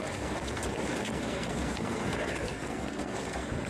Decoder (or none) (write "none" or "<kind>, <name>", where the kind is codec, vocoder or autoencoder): codec, SNAC